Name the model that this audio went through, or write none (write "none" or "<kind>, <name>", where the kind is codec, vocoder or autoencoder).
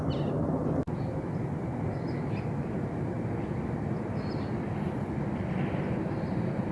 none